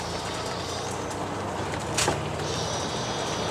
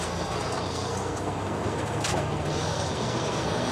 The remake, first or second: second